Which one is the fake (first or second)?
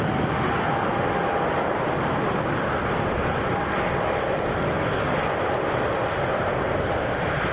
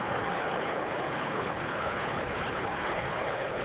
second